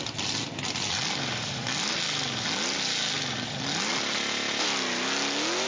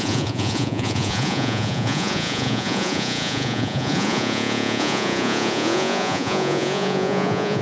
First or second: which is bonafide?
first